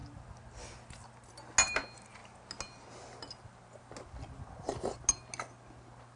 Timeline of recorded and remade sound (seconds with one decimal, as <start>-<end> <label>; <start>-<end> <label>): 0.0-6.2 recorded